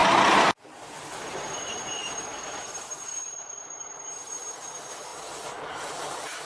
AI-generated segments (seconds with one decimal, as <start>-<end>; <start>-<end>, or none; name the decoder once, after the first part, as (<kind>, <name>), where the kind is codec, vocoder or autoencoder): 1.2-5.1 (vocoder, BigVGAN v2); 5.6-6.4